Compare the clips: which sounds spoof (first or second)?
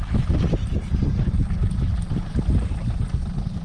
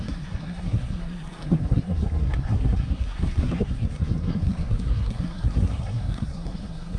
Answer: second